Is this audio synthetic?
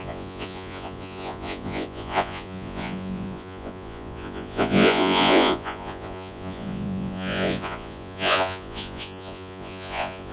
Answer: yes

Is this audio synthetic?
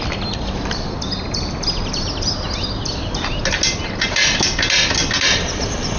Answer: no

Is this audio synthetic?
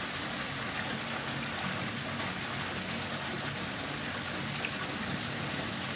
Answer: no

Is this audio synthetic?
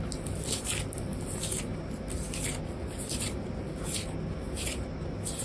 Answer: no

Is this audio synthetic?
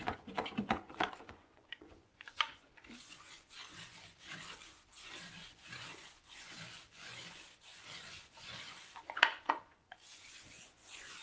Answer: yes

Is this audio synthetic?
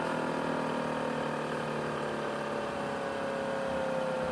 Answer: no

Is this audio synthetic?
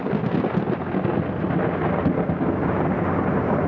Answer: no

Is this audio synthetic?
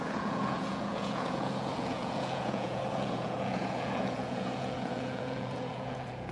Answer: yes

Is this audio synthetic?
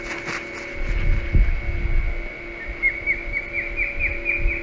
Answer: no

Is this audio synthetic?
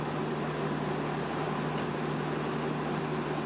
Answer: no